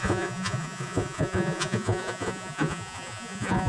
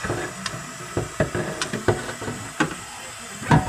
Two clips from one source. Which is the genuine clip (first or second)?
second